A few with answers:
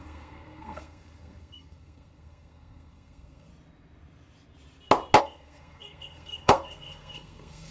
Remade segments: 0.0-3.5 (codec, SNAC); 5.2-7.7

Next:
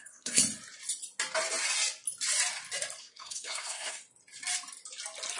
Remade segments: 0.0-0.4 (codec, SNAC); 3.0-4.0